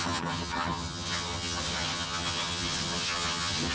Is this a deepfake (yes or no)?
yes